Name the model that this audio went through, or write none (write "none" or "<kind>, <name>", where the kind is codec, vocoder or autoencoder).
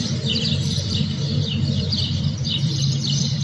vocoder, BigVGAN v2